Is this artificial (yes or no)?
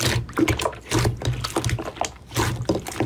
no